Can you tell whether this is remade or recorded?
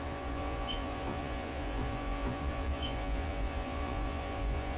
remade